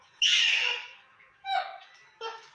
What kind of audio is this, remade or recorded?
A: remade